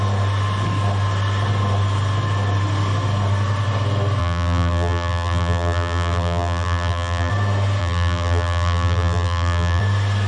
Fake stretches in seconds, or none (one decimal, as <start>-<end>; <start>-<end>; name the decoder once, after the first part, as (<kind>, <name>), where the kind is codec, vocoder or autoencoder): 4.2-7.3 (vocoder, BigVGAN v2); 7.8-9.8